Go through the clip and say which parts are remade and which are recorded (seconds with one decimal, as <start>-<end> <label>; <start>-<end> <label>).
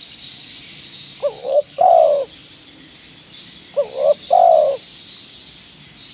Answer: 0.0-1.4 recorded; 1.4-1.9 remade; 1.9-6.1 recorded